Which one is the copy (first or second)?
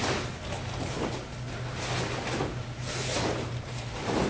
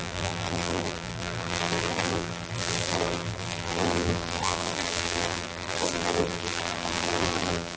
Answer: second